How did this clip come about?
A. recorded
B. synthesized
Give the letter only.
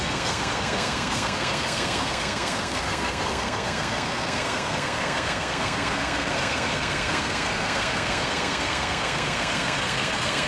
B